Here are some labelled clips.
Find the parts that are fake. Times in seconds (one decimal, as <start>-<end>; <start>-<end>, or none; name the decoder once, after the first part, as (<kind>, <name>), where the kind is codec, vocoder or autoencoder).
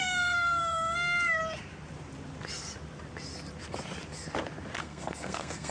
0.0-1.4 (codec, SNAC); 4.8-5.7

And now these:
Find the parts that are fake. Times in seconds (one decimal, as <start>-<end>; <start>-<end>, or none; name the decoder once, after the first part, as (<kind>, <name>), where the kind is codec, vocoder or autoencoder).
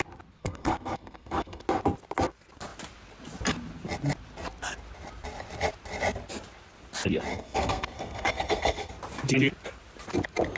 0.4-1.6 (codec, SNAC); 7.3-8.9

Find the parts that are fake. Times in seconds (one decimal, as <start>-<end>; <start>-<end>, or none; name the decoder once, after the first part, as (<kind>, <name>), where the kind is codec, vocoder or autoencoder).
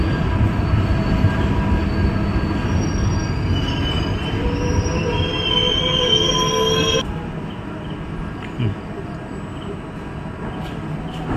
none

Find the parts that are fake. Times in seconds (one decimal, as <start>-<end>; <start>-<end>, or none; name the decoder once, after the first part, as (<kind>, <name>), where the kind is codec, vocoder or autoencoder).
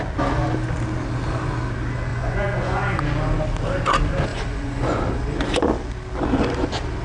2.1-3.0 (vocoder, Vocos); 4.3-5.0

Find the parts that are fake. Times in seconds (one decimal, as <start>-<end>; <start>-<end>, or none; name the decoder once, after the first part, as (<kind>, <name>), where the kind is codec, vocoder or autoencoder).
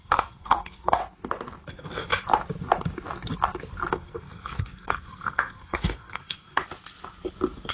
0.0-1.0 (codec, SNAC); 1.7-2.1; 3.9-6.6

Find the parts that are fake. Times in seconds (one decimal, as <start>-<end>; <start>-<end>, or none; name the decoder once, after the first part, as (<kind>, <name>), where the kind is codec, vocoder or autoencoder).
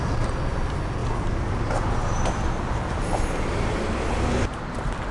none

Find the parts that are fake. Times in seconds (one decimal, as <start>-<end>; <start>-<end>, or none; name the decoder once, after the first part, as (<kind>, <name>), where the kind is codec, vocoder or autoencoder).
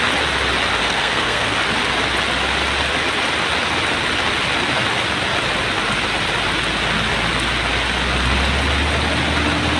0.8-1.6 (codec, SNAC)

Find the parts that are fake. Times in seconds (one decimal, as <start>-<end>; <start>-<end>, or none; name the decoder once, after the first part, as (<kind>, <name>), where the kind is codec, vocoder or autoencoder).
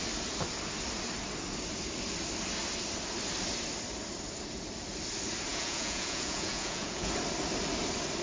5.5-7.1 (vocoder, Vocos)